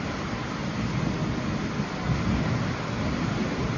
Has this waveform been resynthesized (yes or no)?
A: no